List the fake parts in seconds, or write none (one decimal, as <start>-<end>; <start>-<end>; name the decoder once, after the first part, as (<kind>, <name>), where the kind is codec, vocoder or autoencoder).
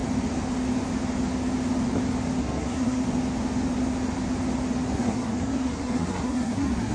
2.4-3.0 (codec, SNAC); 4.9-6.9